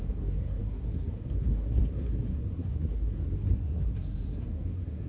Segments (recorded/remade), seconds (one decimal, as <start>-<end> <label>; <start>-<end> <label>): 0.0-5.1 remade